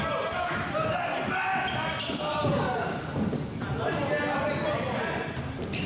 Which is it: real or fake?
real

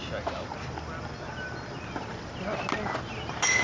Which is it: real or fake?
real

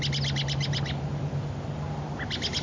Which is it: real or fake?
real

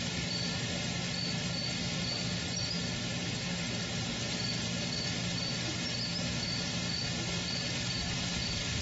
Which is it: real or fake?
real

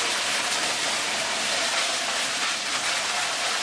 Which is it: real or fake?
fake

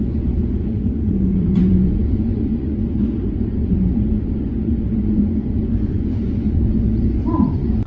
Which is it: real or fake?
fake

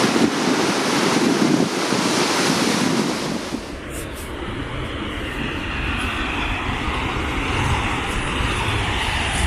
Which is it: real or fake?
real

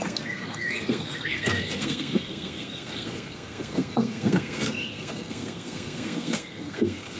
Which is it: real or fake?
fake